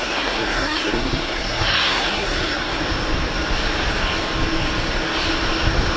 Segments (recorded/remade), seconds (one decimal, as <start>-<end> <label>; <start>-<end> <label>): 0.0-2.8 remade; 2.8-6.0 recorded